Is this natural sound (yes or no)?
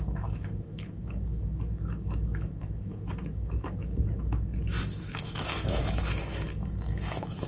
no